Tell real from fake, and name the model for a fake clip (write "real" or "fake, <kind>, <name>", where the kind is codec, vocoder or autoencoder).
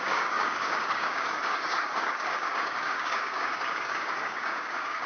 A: fake, codec, DAC